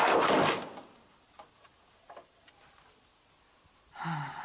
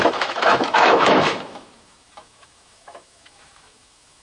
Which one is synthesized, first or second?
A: second